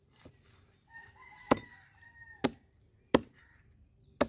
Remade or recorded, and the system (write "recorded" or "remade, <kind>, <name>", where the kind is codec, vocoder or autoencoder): recorded